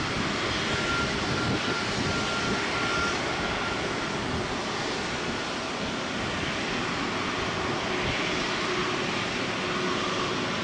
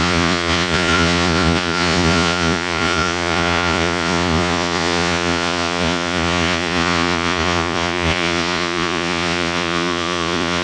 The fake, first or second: second